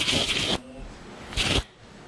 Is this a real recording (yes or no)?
yes